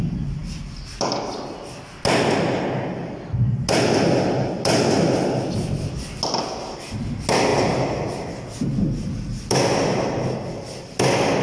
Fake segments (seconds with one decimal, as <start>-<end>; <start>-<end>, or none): none

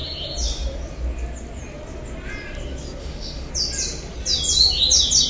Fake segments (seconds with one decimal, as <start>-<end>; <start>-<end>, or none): 3.0-3.5

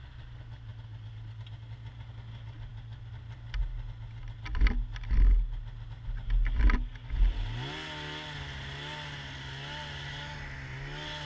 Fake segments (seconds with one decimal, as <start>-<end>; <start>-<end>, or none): none

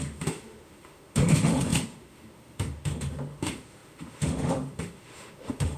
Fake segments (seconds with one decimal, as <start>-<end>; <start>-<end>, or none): 0.0-5.8

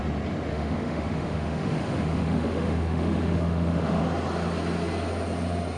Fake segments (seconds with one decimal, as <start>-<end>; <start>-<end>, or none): 0.5-4.0